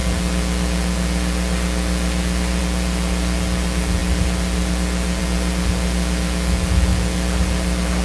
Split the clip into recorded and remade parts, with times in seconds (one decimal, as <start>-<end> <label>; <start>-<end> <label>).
0.0-4.0 recorded; 4.0-5.2 remade; 5.2-6.9 recorded; 6.9-8.0 remade